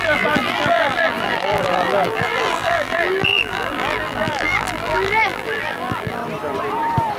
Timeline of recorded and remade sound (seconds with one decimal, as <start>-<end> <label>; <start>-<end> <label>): 0.0-6.2 remade; 6.2-7.2 recorded